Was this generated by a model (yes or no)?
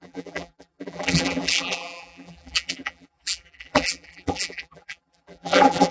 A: yes